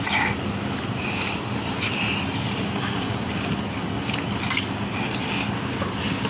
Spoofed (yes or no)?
no